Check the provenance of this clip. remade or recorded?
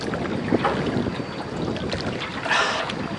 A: recorded